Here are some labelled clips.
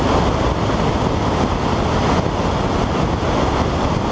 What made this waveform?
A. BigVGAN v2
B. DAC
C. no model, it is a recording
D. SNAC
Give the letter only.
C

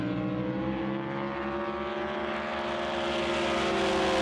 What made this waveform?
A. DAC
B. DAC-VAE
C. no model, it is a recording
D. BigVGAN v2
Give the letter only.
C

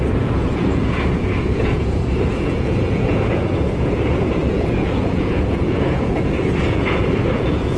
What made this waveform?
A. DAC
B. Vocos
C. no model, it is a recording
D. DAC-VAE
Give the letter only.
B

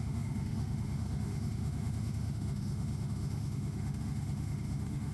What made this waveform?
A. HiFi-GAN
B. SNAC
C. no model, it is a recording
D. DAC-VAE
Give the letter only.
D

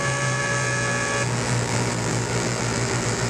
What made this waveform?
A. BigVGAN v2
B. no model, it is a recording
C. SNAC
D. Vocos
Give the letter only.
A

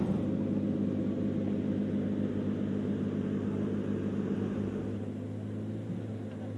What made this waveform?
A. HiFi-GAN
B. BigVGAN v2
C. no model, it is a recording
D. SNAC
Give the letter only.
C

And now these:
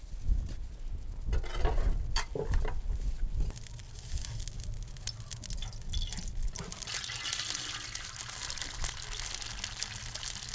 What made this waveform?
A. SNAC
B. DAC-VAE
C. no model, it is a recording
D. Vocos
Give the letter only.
C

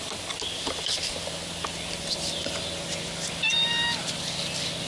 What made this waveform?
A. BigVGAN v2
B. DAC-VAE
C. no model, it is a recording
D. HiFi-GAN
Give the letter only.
C